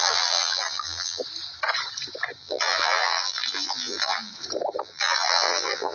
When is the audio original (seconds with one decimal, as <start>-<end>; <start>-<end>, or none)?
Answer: 1.2-2.4; 4.3-4.8

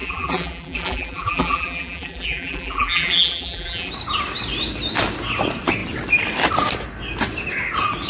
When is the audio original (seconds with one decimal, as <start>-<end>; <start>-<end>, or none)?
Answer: 3.9-8.1

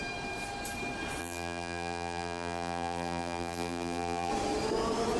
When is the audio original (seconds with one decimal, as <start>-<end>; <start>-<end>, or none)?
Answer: 0.0-1.2; 4.3-5.2